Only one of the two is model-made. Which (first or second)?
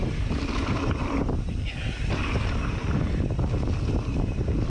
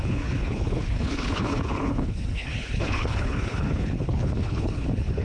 second